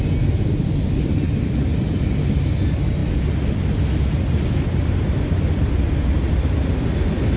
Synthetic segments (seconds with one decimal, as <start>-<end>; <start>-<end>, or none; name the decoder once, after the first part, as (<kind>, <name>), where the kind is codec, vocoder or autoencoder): none